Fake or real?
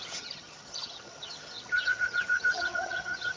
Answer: fake